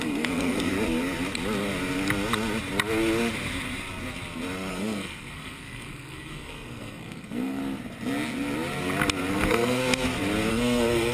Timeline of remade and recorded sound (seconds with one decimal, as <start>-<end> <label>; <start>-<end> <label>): 0.0-0.7 remade; 0.7-4.7 recorded; 4.7-7.6 remade; 7.6-9.3 recorded; 9.3-9.8 remade; 9.8-10.5 recorded; 10.5-11.1 remade